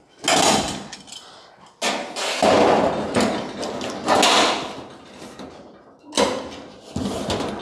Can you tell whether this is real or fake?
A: real